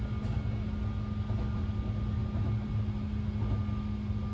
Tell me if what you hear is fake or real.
real